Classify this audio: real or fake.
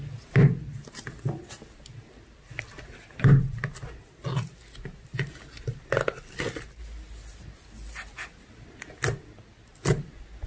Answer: real